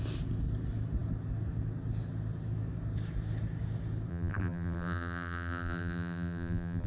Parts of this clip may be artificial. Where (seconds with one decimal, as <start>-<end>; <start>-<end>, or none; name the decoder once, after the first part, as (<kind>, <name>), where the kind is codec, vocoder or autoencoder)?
4.1-6.9 (vocoder, BigVGAN v2)